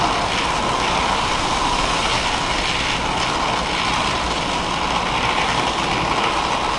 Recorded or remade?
recorded